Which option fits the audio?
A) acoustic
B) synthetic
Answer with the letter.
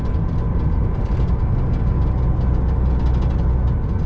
A